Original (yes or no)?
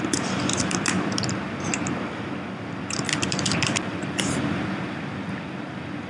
no